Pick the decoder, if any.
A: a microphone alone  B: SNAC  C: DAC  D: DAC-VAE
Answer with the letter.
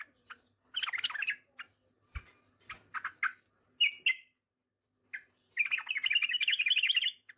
A